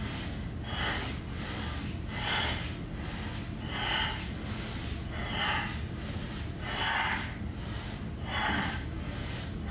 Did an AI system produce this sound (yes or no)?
no